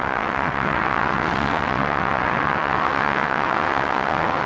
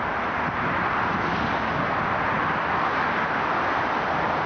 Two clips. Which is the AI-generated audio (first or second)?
first